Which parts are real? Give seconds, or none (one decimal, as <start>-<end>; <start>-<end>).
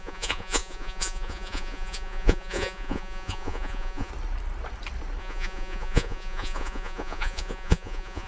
4.1-5.2